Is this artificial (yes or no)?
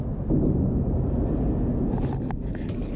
no